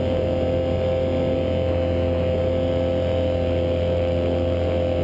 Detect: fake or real real